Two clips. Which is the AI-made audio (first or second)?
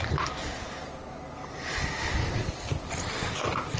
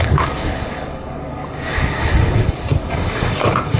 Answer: second